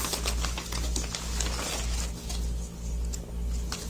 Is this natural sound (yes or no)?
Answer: yes